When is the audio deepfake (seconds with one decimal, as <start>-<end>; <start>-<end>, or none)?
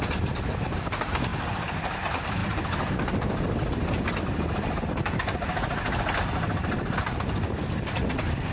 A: 0.0-1.3; 2.0-2.4; 3.9-8.5